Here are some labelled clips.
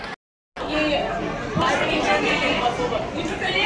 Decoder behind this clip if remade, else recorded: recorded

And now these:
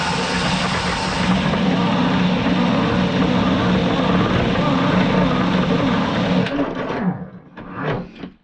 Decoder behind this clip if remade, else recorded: recorded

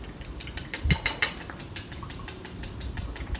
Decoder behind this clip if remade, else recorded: recorded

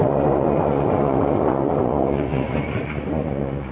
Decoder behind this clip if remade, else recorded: remade, vocoder, Vocos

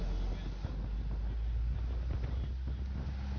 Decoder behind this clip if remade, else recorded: recorded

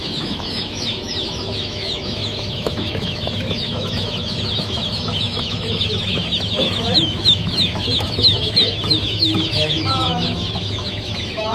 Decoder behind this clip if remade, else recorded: remade, autoencoder, DAC-VAE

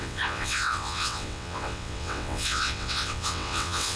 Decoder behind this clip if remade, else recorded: remade, vocoder, WaveNeXt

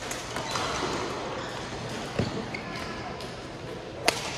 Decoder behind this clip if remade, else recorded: recorded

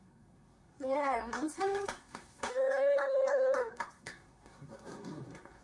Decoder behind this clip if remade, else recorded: remade, codec, SNAC